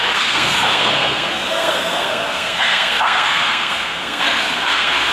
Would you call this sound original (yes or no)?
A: no